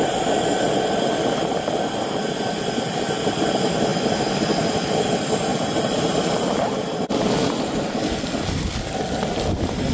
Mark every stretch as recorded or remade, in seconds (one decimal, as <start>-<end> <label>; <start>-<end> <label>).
0.0-9.9 recorded